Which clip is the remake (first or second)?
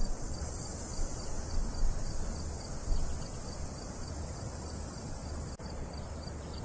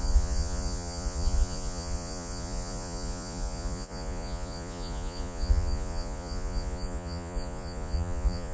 second